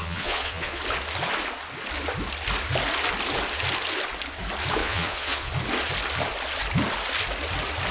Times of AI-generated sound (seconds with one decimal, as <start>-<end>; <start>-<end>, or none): 0.0-0.8; 4.8-5.5